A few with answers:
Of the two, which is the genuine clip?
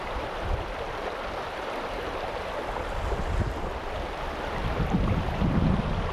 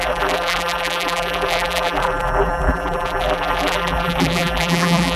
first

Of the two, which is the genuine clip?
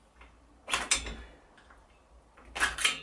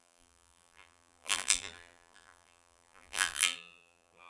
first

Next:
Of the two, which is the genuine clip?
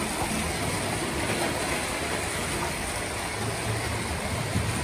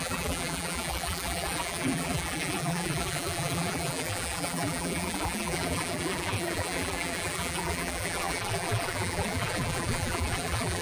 first